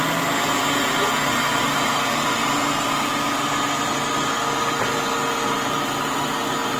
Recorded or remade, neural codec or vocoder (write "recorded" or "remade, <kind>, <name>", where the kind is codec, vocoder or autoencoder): recorded